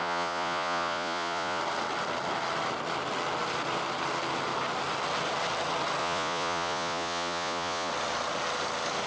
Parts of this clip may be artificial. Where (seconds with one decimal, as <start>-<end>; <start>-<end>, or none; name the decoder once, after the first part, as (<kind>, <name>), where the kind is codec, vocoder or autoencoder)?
0.0-1.6 (vocoder, Vocos); 6.0-7.9